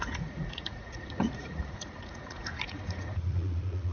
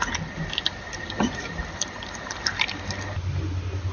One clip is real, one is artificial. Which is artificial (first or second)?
first